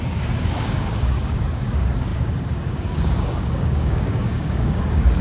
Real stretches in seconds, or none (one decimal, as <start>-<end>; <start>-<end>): none